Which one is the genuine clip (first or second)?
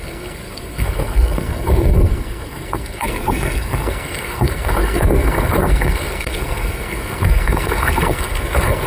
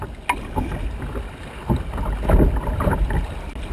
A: second